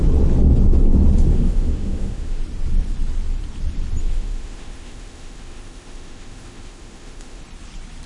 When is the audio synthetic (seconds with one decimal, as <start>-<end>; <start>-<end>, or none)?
1.3-2.4; 4.0-7.4